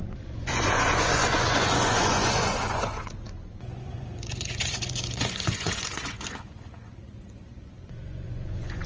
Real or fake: fake